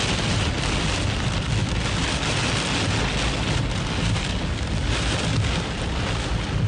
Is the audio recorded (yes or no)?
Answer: yes